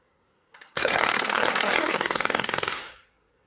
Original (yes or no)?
no